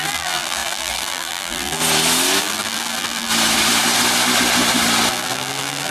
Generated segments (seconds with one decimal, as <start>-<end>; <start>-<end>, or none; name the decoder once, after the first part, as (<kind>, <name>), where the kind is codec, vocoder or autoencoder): 0.0-1.8 (vocoder, BigVGAN v2); 2.4-3.3; 5.1-5.9